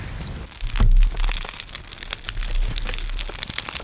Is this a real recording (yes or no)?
yes